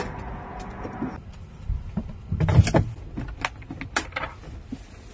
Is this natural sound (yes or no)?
yes